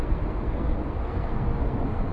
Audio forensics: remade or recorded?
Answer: remade